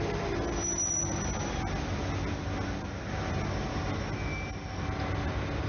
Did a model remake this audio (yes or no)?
no